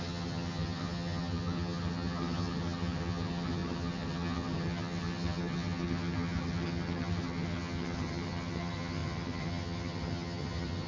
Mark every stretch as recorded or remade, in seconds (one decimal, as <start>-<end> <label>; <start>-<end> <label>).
0.0-10.9 remade